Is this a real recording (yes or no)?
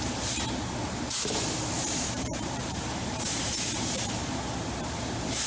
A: no